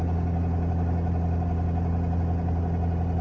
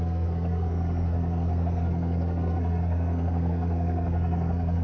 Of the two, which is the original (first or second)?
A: first